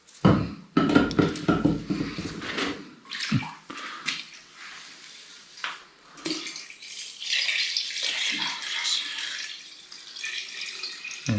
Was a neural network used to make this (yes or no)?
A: no